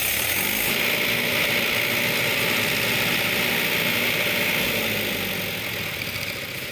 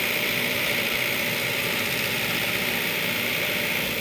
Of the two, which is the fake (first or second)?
second